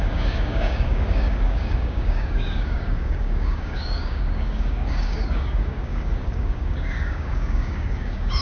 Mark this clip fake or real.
fake